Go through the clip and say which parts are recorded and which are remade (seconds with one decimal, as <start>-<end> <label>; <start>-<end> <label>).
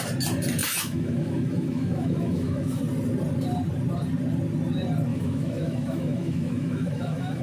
0.0-0.6 recorded; 0.6-2.8 remade; 2.8-5.1 recorded; 5.1-7.4 remade